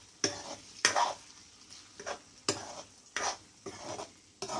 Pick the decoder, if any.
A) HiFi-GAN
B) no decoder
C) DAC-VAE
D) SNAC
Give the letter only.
B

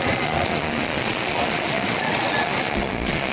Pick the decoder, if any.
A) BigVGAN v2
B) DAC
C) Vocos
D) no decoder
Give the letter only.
C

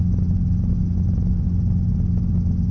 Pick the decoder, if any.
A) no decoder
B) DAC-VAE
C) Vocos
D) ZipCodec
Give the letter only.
A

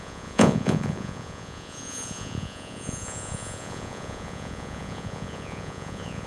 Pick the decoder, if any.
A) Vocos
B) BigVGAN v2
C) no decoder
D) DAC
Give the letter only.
A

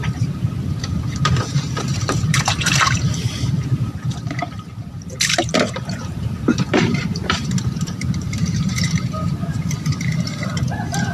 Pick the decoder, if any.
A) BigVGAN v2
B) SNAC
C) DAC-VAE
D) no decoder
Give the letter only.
A